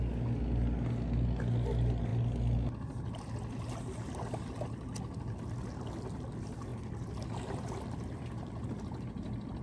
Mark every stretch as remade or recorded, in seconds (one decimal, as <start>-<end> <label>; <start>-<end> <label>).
0.0-9.6 recorded